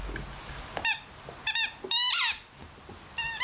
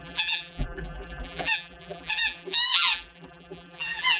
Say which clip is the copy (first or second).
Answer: second